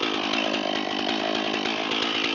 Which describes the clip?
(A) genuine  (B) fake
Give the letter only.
A